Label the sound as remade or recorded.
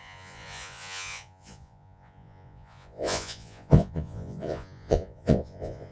remade